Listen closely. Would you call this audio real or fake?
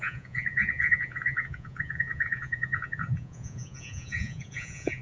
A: fake